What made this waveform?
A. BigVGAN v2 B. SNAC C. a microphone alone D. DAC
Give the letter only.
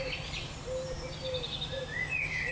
C